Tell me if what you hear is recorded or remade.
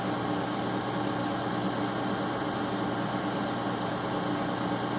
recorded